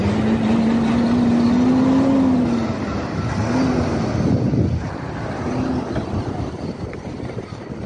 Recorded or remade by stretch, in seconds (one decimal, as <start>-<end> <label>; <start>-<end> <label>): 0.0-7.9 recorded